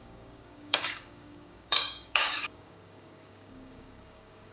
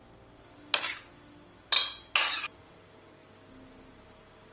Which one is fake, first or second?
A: first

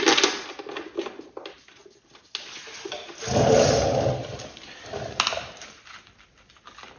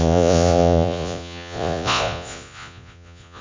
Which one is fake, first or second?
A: second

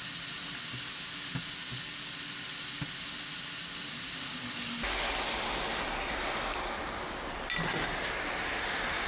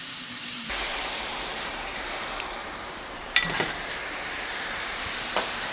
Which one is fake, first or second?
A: second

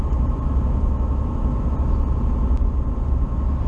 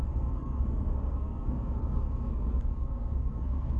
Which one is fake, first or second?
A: second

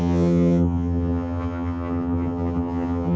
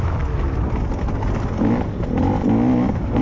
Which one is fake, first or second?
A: first